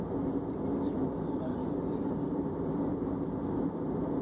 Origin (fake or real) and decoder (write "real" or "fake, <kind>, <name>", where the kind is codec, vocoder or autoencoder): real